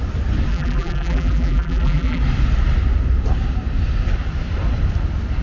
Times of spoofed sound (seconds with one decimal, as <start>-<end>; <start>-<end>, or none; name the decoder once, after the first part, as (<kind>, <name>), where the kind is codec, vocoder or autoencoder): 0.5-2.2 (vocoder, BigVGAN v2)